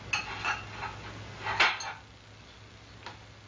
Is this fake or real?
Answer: real